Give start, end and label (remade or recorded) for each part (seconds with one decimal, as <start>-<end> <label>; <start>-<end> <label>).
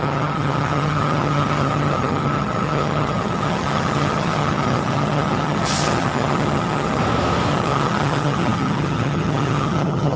0.0-7.0 remade; 7.0-7.5 recorded; 7.5-10.2 remade